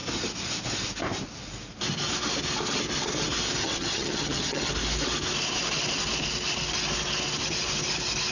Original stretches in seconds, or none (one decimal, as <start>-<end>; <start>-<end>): 0.0-3.6; 4.7-8.3